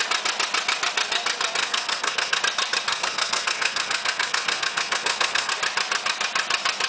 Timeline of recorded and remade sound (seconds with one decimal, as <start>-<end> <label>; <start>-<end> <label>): 0.0-1.6 recorded; 1.6-2.4 remade; 2.4-2.9 recorded; 2.9-5.5 remade; 5.5-6.9 recorded